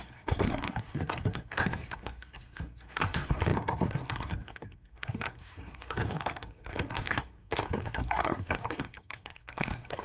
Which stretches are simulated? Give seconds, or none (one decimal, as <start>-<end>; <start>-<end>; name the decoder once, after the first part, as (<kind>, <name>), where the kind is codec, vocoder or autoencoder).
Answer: 0.0-10.0 (codec, SNAC)